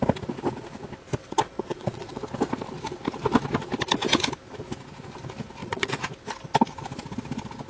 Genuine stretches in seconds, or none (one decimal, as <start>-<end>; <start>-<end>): 0.0-1.2; 2.2-5.6; 6.1-7.7